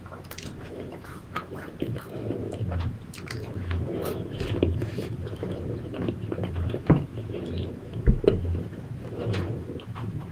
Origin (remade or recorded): remade